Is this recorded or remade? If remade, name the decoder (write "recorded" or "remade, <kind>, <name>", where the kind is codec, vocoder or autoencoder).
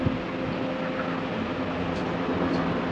recorded